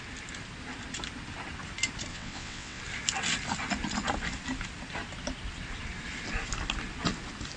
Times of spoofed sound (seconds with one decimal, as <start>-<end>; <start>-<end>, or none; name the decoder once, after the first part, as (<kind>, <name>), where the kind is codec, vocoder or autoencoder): 2.1-2.8 (vocoder, WaveNeXt)